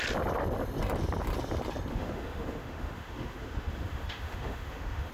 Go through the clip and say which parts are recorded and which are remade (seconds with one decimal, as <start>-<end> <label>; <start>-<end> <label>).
0.0-1.9 recorded; 1.9-5.1 remade